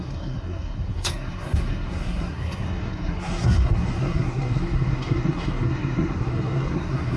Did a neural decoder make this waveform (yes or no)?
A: yes